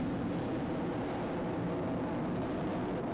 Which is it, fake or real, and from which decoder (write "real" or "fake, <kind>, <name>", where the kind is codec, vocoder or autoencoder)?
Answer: real